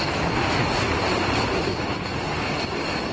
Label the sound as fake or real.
real